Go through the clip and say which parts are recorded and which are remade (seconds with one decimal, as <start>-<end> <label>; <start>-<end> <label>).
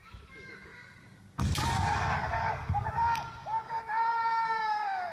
0.0-5.1 remade